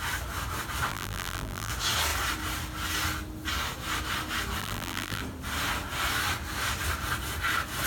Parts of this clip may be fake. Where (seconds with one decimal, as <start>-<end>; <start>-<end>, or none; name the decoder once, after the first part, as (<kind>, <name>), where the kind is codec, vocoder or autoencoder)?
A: 0.9-1.7 (vocoder, BigVGAN v2); 4.6-5.2